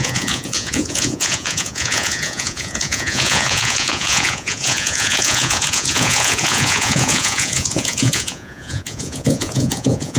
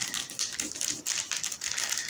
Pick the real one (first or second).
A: second